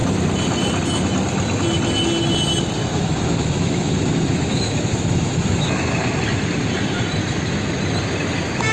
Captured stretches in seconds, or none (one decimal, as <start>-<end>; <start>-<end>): 0.0-2.8; 6.0-7.2; 7.8-8.7